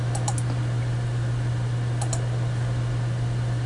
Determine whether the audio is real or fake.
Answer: real